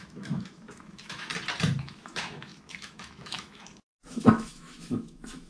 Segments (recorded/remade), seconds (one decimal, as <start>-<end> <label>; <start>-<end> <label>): 0.0-1.3 remade; 1.3-1.8 recorded; 1.8-5.5 remade

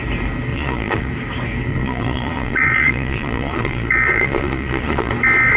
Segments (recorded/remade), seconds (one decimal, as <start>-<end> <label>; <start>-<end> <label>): 0.0-0.5 recorded; 0.5-1.1 remade; 1.1-1.7 recorded; 1.7-5.1 remade; 5.1-5.6 recorded

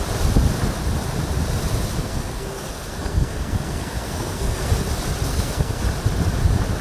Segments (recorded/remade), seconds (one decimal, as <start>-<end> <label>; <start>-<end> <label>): 0.0-2.0 recorded; 2.0-4.7 remade; 4.7-5.3 recorded; 5.3-5.8 remade; 5.8-6.8 recorded

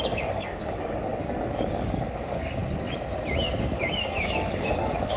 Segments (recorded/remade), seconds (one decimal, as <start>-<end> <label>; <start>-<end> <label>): 0.0-2.6 remade; 2.6-3.6 recorded; 3.6-5.2 remade

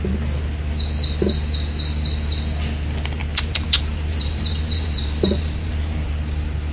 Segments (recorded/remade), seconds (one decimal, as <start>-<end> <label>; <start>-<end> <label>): 0.0-3.2 recorded; 3.2-6.2 remade; 6.2-6.7 recorded